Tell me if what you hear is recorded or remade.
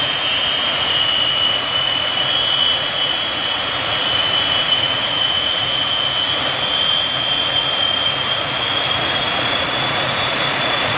remade